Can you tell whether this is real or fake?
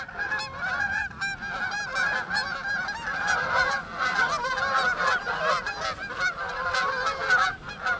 real